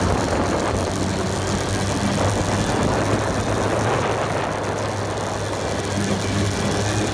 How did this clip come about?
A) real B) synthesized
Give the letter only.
A